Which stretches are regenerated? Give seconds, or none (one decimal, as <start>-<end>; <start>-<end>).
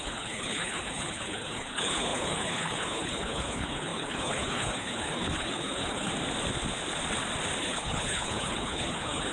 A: 0.0-6.1; 7.6-9.3